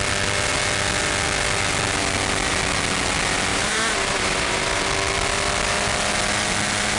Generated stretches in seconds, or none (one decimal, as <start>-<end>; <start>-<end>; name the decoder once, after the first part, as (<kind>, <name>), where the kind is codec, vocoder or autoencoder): 3.5-4.8 (vocoder, BigVGAN v2)